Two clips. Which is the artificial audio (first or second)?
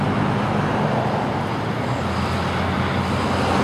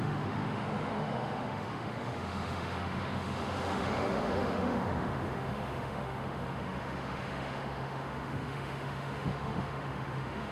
second